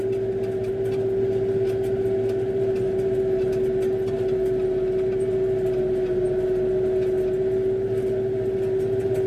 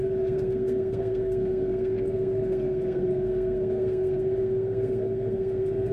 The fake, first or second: second